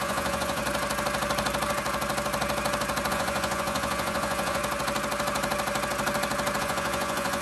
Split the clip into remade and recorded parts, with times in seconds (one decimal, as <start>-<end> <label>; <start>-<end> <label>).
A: 0.0-0.6 remade; 0.6-3.1 recorded; 3.1-4.6 remade; 4.6-6.6 recorded; 6.6-7.4 remade